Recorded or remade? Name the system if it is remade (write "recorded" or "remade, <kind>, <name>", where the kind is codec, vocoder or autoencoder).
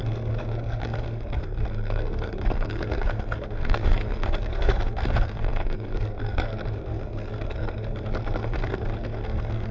remade, codec, SNAC